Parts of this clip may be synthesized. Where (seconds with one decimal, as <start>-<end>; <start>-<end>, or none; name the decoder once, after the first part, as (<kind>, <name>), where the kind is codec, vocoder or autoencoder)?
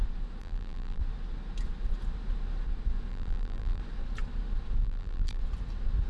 0.4-1.0 (vocoder, BigVGAN v2); 3.1-3.8; 4.8-5.4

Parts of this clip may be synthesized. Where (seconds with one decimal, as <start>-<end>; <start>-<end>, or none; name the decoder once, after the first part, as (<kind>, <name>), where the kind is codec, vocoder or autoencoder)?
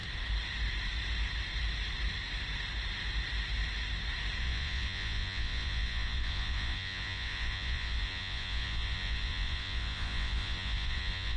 4.4-11.4 (vocoder, Vocos)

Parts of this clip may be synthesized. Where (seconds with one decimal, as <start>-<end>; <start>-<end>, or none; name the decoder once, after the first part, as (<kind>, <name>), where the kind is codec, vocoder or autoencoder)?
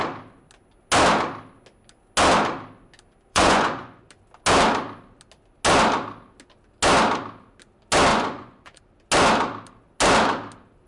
3.3-4.0 (vocoder, Vocos); 8.1-8.8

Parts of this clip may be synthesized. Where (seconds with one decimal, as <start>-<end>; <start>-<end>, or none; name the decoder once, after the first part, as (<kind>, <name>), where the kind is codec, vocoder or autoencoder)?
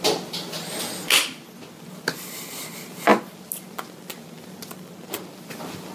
none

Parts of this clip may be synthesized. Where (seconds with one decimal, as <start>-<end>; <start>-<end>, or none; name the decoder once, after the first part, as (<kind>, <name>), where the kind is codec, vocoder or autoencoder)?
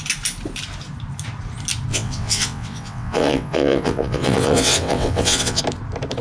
1.9-5.6 (vocoder, WaveNeXt)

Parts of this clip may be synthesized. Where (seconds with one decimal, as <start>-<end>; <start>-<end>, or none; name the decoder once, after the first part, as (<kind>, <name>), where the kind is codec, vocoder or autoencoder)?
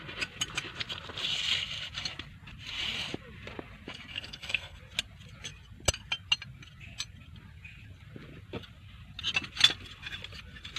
4.1-4.8 (codec, SNAC)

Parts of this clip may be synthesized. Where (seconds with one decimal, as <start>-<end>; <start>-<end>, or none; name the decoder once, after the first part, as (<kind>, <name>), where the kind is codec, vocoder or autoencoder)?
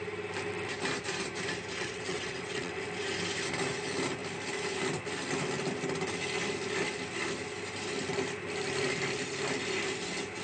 1.8-2.8 (vocoder, WaveNeXt)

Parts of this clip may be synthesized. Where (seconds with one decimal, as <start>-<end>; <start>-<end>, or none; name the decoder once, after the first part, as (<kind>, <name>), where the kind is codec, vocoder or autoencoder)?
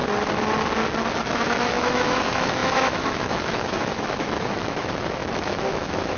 1.2-6.2 (autoencoder, DAC-VAE)